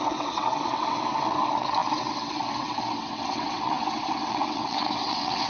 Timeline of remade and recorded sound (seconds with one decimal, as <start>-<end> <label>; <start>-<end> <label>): 0.0-5.5 remade